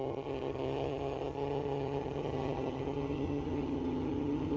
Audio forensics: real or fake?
fake